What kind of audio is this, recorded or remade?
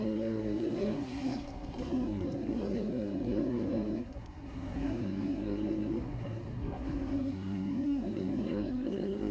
remade